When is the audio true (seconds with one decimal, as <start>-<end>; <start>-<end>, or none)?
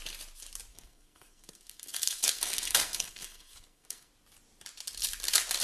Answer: 0.0-0.7; 4.1-5.6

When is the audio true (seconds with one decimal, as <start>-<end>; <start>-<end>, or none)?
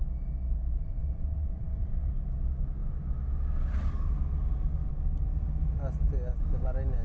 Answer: 0.0-1.0; 2.1-7.0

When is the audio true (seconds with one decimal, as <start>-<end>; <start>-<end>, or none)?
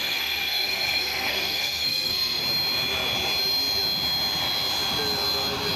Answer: 2.4-5.8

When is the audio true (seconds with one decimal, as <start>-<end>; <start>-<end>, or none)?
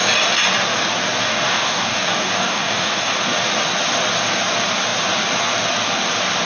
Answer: 0.0-1.2; 3.2-6.4